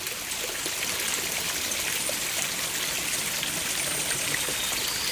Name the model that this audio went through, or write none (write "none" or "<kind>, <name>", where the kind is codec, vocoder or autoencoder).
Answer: none